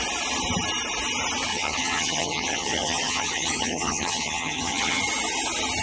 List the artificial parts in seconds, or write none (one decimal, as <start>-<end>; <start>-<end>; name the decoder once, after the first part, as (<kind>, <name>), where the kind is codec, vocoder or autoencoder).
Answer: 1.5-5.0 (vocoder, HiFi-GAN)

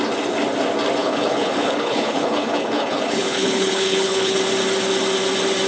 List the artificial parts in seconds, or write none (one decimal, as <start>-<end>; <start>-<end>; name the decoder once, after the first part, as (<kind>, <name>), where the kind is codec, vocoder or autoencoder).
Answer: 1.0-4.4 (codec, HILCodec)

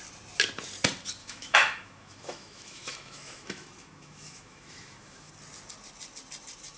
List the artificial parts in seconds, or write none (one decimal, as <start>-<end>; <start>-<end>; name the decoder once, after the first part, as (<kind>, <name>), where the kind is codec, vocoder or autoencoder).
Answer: 1.2-5.3 (autoencoder, DAC-VAE)

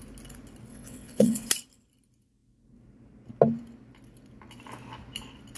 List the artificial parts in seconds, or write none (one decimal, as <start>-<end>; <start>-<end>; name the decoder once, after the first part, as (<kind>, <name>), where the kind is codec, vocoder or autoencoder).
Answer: 0.7-1.5 (vocoder, WaveNeXt)

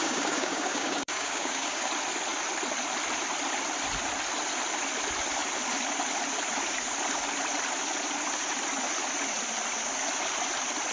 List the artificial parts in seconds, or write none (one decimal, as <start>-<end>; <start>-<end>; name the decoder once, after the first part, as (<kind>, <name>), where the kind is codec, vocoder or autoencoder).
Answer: 0.0-1.9 (codec, DAC)

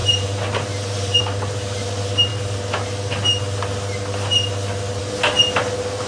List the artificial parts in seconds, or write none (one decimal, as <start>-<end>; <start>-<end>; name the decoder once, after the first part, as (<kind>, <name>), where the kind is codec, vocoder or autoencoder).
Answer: 0.0-1.2 (vocoder, BigVGAN v2)

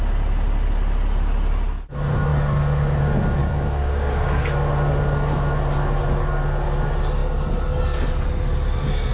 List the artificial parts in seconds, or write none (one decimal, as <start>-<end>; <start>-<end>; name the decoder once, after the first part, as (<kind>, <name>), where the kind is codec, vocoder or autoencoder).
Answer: 3.4-4.4 (codec, DAC)